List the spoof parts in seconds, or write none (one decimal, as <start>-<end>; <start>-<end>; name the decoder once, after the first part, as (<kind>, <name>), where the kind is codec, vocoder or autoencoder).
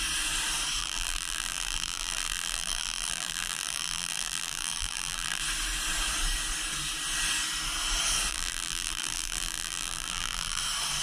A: 0.8-5.4 (vocoder, BigVGAN v2); 8.3-10.6